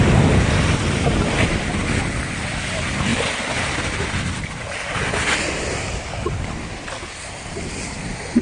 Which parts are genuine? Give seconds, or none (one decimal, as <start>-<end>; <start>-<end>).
0.0-3.1; 4.1-8.4